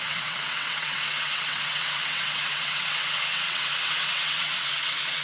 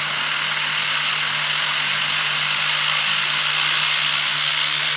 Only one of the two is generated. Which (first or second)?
first